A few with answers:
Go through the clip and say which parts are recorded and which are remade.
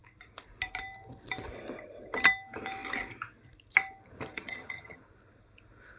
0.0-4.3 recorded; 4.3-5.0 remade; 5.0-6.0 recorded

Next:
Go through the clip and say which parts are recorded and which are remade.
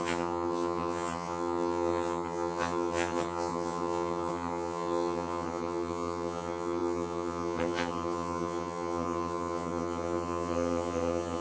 0.0-11.4 remade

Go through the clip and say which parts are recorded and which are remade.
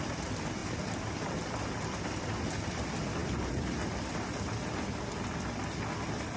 0.0-6.4 recorded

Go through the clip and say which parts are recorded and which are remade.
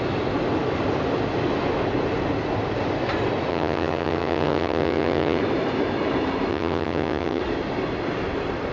0.0-3.5 recorded; 3.5-5.4 remade; 5.4-6.5 recorded; 6.5-7.4 remade; 7.4-8.7 recorded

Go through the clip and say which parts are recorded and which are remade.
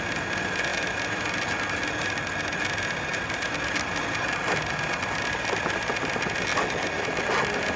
0.0-7.8 recorded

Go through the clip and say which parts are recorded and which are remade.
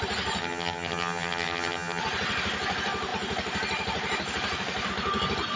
0.0-0.4 recorded; 0.4-2.0 remade; 2.0-5.6 recorded